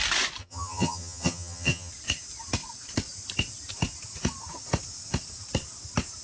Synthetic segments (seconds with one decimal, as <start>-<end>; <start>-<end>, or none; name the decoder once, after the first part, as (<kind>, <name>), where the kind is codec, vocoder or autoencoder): 0.4-1.9 (vocoder, HiFi-GAN)